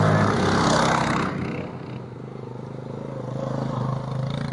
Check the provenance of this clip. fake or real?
real